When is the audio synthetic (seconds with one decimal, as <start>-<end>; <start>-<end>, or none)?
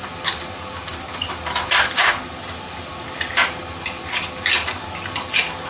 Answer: none